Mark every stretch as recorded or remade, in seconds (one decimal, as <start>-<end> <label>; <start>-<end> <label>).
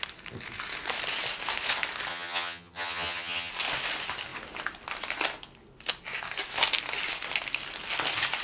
0.0-2.1 recorded; 2.1-3.5 remade; 3.5-8.4 recorded